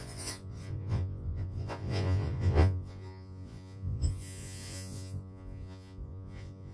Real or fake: fake